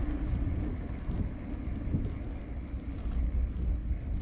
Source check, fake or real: real